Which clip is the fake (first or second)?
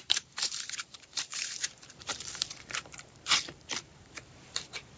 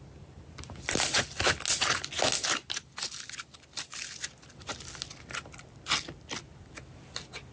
first